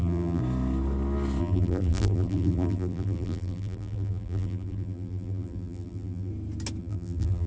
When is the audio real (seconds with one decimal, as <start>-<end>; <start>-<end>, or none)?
0.4-1.4; 6.3-6.8